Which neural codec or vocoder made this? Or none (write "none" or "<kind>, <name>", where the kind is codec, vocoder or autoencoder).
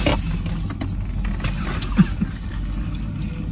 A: none